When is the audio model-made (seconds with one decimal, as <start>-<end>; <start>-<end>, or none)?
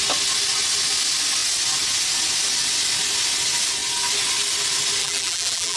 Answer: 5.0-5.8